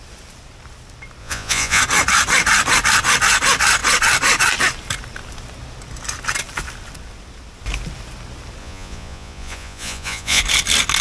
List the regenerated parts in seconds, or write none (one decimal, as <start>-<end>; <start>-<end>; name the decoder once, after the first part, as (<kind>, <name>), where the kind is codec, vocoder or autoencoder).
1.2-1.8 (vocoder, Vocos); 8.6-10.4